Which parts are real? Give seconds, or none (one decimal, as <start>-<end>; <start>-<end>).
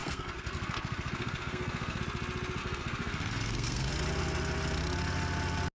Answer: 2.0-2.6; 3.9-5.7